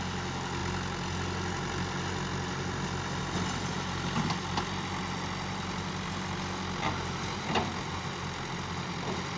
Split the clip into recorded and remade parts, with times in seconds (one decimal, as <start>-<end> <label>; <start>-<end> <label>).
0.0-9.4 recorded